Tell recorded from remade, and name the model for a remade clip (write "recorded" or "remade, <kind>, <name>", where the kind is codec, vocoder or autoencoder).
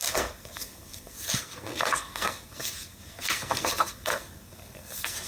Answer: remade, codec, SNAC